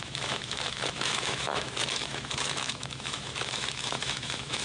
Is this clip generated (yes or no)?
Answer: yes